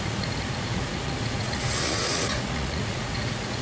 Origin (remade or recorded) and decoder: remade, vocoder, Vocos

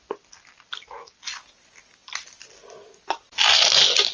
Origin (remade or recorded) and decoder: recorded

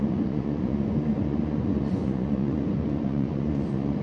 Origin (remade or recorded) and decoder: remade, vocoder, Vocos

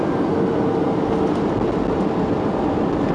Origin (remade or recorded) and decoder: recorded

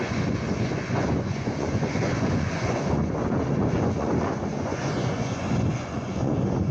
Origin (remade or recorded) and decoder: remade, vocoder, Vocos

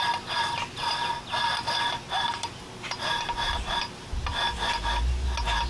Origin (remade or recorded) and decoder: recorded